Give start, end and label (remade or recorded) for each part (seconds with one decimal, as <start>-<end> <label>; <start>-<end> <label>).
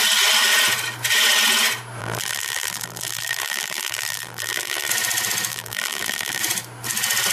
0.0-2.0 recorded; 2.0-4.9 remade; 4.9-5.5 recorded; 5.5-6.4 remade; 6.4-7.3 recorded